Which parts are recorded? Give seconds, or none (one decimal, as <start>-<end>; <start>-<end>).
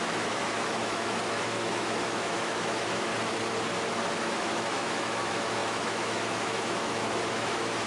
3.1-4.2